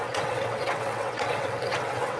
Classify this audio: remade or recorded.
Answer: remade